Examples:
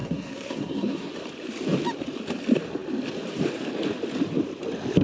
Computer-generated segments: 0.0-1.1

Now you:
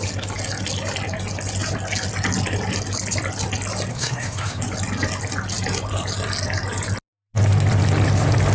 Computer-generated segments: 3.9-4.6

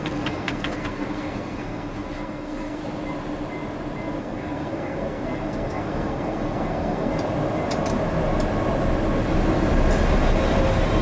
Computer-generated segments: 0.0-2.8; 4.2-7.1

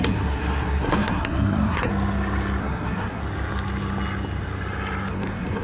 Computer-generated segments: 0.0-1.9; 2.6-3.2; 5.1-5.6

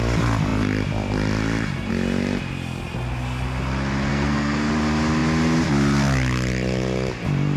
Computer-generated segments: 4.1-4.7